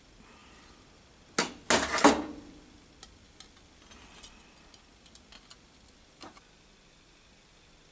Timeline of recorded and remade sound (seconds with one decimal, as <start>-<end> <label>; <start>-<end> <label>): 0.0-7.9 recorded